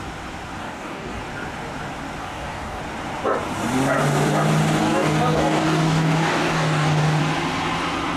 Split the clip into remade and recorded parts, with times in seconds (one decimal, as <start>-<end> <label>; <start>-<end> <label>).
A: 0.0-0.6 recorded; 0.6-1.2 remade; 1.2-2.2 recorded; 2.2-2.8 remade; 2.8-4.8 recorded; 4.8-7.2 remade; 7.2-8.2 recorded